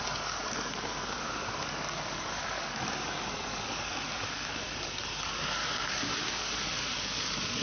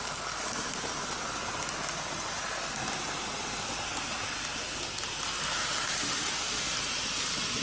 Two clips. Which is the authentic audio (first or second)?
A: second